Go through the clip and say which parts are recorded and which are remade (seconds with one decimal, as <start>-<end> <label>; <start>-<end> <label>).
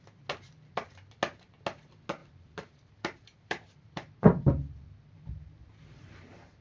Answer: 0.0-2.2 recorded; 2.2-6.6 remade